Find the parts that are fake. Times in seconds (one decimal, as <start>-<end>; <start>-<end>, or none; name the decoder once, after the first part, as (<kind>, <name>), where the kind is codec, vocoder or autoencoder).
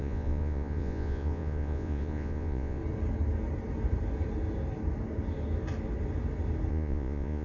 0.0-2.8 (vocoder, Vocos); 6.7-7.4